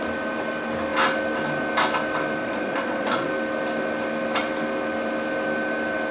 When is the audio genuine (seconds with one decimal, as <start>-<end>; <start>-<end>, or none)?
0.0-2.4; 3.3-6.1